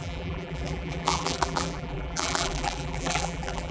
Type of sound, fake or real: fake